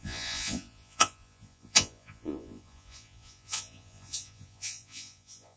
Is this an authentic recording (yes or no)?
no